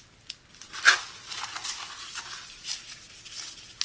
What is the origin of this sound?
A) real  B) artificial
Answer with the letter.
A